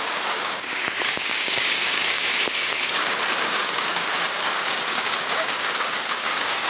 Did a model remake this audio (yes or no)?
yes